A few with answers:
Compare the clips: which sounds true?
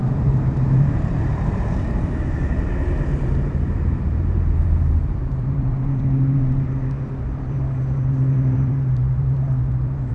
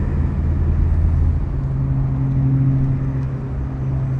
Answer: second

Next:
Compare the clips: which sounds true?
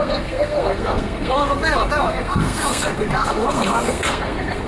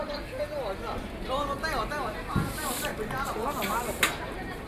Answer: second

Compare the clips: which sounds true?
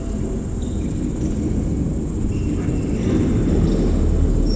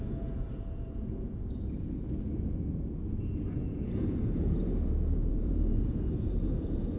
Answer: first